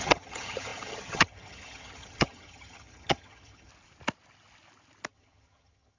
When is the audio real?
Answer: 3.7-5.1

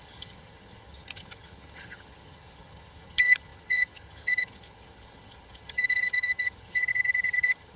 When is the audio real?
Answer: none

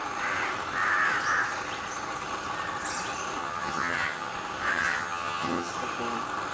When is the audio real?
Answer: 0.0-3.4; 4.3-4.7; 5.7-6.5

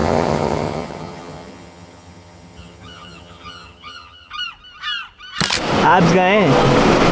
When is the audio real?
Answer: 4.3-7.1

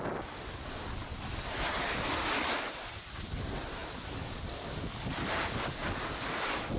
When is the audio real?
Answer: 0.0-6.8

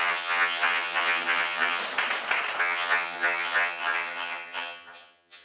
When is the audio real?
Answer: 1.8-2.6

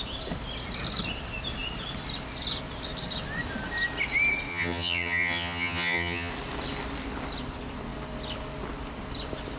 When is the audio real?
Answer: 0.0-4.5; 6.3-9.6

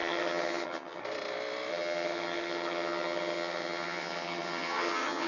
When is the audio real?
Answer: 1.0-1.7